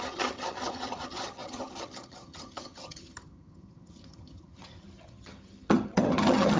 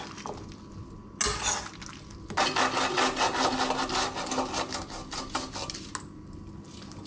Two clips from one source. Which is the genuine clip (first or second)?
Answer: second